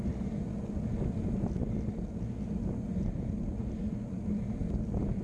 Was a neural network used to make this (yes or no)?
no